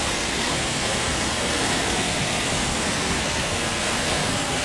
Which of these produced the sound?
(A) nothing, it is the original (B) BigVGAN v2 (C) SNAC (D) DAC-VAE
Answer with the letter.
C